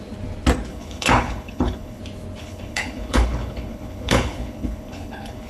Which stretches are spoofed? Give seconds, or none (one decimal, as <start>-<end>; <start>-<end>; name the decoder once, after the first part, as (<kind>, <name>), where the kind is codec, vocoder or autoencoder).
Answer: 0.7-2.0 (codec, HILCodec); 2.4-5.5